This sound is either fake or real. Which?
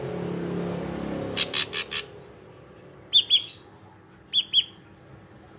real